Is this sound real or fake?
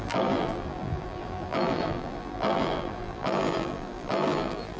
fake